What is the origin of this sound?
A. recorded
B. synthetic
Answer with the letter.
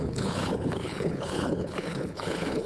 B